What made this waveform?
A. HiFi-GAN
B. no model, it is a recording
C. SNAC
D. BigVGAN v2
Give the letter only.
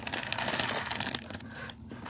B